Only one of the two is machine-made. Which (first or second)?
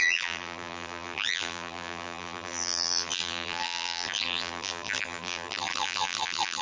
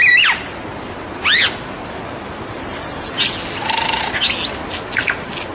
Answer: first